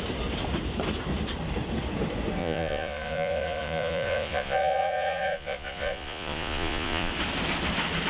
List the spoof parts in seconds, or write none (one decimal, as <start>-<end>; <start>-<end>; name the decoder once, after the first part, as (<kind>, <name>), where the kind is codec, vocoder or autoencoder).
2.4-7.1 (vocoder, Vocos)